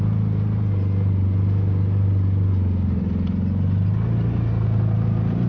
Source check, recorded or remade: recorded